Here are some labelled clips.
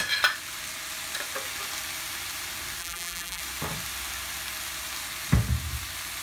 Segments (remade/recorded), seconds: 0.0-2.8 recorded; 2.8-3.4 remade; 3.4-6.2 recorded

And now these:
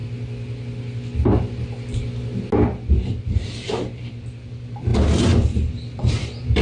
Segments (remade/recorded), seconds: 0.0-2.9 recorded; 2.9-6.6 remade

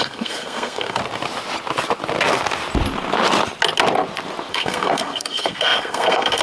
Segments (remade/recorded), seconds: 0.0-1.0 remade; 1.0-4.5 recorded; 4.5-6.4 remade

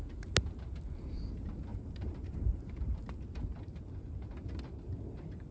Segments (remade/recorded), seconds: 0.0-1.7 recorded; 1.7-3.2 remade; 3.2-5.5 recorded